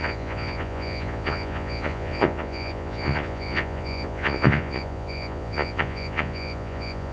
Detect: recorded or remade remade